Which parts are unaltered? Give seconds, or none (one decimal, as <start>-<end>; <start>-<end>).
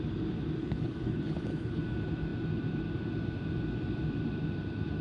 0.0-0.6; 1.8-5.0